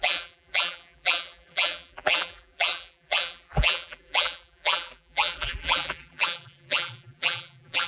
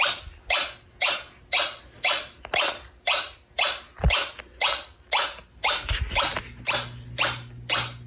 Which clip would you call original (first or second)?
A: second